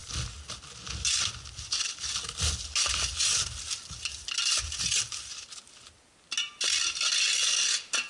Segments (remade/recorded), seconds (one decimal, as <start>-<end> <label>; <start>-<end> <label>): 0.0-8.1 recorded

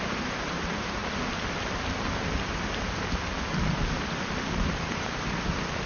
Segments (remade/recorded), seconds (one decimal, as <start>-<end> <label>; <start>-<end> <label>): 0.0-1.0 remade; 1.0-4.5 recorded; 4.5-5.9 remade

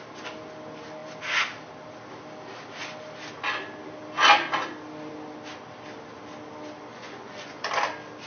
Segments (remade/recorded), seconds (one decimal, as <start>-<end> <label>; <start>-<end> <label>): 0.0-6.9 recorded; 6.9-7.7 remade; 7.7-8.3 recorded

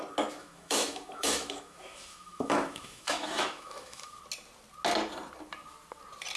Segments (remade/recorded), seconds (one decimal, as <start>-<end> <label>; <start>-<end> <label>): 0.0-0.4 recorded; 0.4-4.2 remade; 4.2-6.4 recorded

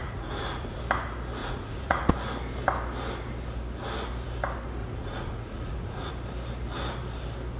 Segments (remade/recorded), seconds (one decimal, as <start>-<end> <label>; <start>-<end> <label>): 0.0-0.8 remade; 0.8-1.4 recorded; 1.4-2.1 remade; 2.1-4.8 recorded; 4.8-6.1 remade; 6.1-7.6 recorded